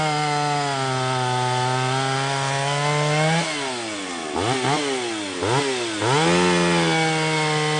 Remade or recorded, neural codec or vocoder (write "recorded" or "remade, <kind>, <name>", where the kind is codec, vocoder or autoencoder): recorded